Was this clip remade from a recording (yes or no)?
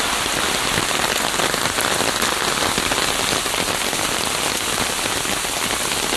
no